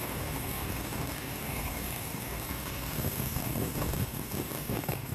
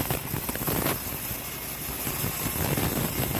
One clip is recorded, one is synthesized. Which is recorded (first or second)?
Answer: second